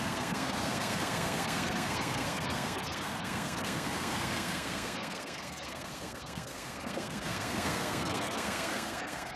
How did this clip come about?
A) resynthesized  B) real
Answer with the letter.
A